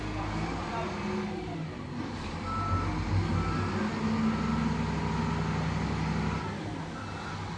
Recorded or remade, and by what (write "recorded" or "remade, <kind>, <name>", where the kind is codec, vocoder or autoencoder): recorded